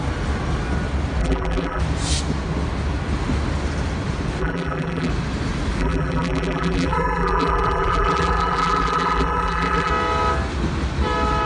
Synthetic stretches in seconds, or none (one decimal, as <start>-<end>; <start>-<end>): 1.2-1.8; 4.4-5.1; 5.8-9.9